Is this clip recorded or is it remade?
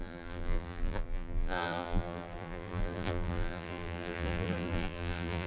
remade